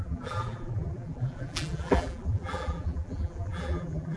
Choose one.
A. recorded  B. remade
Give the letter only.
B